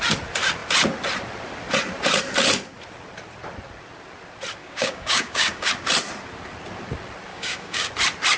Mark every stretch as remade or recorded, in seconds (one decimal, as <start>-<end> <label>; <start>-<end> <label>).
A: 0.0-4.6 recorded; 4.6-5.7 remade; 5.7-7.3 recorded; 7.3-7.9 remade; 7.9-8.4 recorded